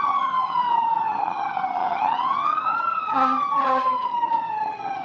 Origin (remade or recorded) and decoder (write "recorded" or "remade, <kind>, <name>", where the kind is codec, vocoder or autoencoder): remade, vocoder, HiFi-GAN